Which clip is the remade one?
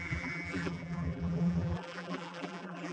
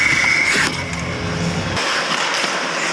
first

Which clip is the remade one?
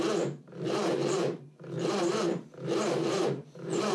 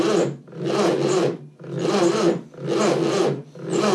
first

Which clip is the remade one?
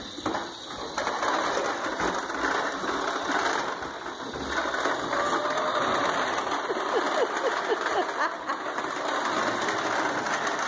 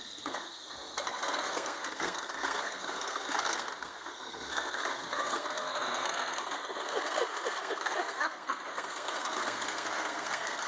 second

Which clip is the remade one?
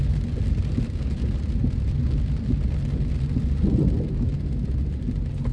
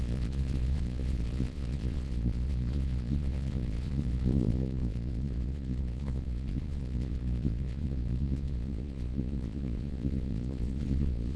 second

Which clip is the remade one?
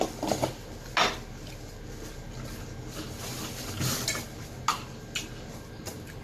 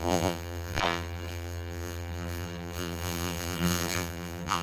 second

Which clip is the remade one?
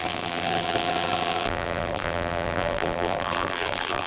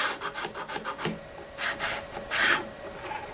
first